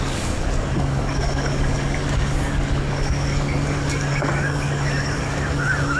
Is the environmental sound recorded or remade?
remade